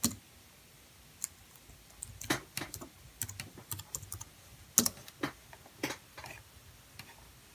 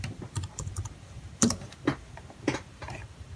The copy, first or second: second